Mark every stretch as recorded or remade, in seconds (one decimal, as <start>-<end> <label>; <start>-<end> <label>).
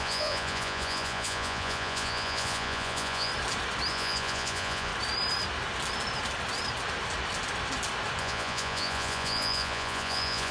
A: 0.0-3.3 remade; 3.3-3.9 recorded; 3.9-4.9 remade; 4.9-8.2 recorded; 8.2-10.5 remade